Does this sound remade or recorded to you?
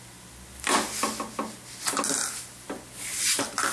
recorded